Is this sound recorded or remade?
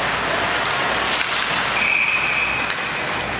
recorded